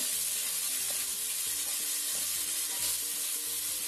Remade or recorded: recorded